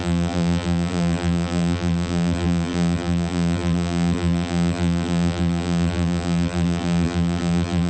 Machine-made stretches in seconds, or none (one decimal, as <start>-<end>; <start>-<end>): 0.0-7.9